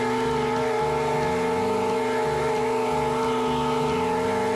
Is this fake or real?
real